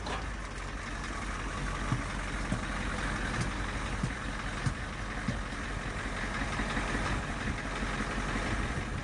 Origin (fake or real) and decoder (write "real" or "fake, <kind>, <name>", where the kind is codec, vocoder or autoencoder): real